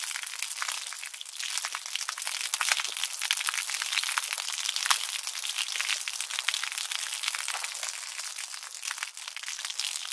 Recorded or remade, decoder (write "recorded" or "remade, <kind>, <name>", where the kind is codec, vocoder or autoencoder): recorded